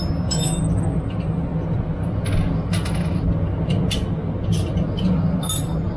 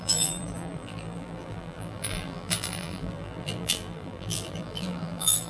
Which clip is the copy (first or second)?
second